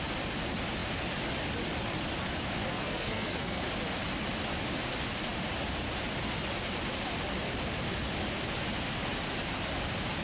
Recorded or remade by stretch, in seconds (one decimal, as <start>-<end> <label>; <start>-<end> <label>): 0.0-2.7 recorded; 2.7-3.6 remade; 3.6-10.2 recorded